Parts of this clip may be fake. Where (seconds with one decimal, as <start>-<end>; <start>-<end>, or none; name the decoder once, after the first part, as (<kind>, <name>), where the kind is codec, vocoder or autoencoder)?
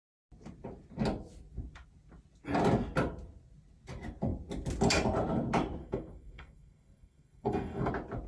5.8-7.9 (codec, SNAC)